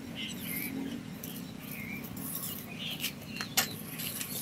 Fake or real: real